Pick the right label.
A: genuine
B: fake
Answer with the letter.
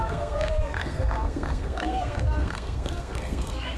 B